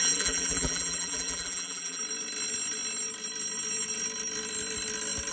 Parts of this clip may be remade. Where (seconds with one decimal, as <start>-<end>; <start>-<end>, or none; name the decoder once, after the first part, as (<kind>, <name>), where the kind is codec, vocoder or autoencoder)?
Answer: 0.0-2.0 (vocoder, BigVGAN v2)